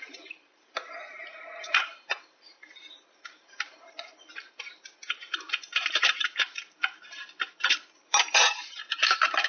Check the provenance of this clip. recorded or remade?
remade